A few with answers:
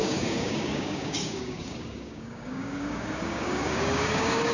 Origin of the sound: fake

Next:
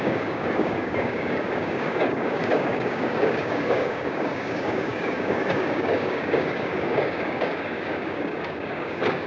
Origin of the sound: fake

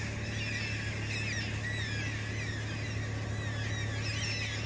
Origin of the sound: real